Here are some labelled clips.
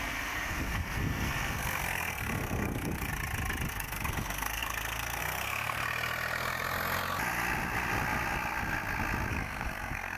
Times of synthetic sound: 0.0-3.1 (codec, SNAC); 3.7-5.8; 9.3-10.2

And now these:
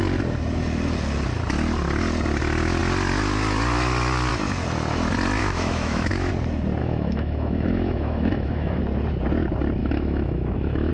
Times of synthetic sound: 5.4-6.3 (autoencoder, DAC-VAE); 6.8-8.8; 9.8-10.9